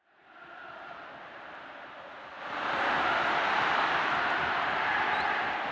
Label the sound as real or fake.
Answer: fake